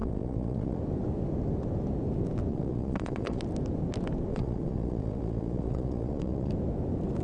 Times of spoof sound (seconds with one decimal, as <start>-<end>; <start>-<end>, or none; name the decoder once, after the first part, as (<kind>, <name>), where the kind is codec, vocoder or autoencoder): 0.0-0.8 (vocoder, Vocos); 2.5-3.4; 4.3-6.5